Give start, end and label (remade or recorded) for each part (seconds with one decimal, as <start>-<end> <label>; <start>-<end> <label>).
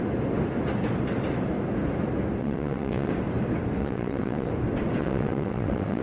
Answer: 0.0-2.4 recorded; 2.4-3.1 remade; 3.1-3.8 recorded; 3.8-4.5 remade; 4.5-5.0 recorded; 5.0-6.0 remade